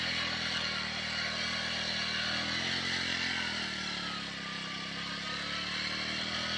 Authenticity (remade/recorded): recorded